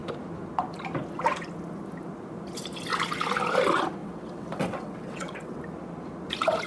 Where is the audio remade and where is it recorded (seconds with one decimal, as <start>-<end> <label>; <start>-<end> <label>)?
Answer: 0.0-4.0 recorded; 4.0-5.6 remade; 5.6-6.7 recorded